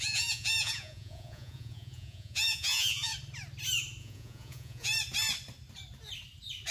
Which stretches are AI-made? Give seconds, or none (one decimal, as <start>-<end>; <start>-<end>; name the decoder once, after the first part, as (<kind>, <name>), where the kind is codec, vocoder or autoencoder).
0.0-3.1 (vocoder, Vocos); 4.0-4.9